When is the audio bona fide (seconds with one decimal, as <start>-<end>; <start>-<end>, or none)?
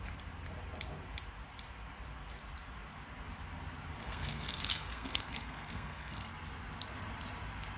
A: 0.0-4.0; 6.3-7.8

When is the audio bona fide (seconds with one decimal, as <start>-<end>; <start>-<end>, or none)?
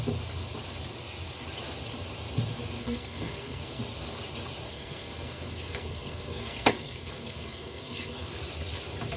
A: 0.0-2.8; 3.8-4.7; 8.3-9.2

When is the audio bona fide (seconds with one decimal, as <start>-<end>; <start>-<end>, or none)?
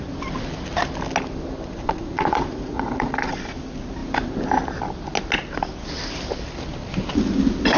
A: 0.0-1.7; 3.4-7.8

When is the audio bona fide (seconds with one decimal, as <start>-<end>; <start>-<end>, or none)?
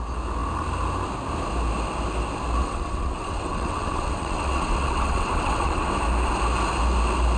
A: 0.0-2.6; 5.9-7.4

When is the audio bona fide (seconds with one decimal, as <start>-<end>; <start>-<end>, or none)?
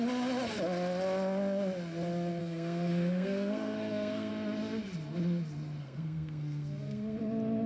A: 0.0-2.4; 4.3-5.8; 7.2-7.7